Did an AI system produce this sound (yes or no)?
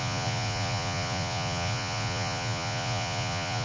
yes